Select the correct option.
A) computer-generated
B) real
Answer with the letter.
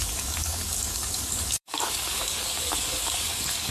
A